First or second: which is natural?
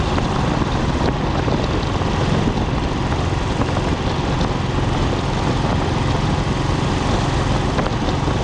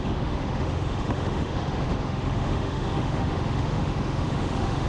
first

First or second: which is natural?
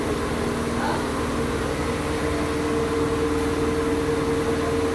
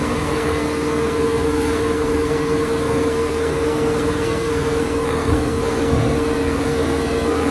first